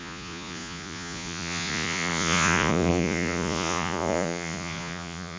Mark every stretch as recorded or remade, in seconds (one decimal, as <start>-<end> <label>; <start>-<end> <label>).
0.0-5.4 remade